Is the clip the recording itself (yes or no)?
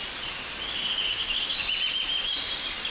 yes